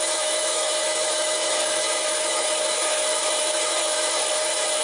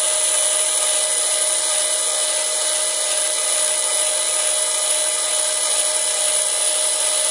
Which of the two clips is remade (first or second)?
first